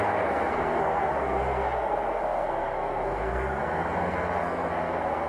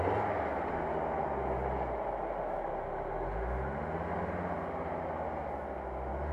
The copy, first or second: first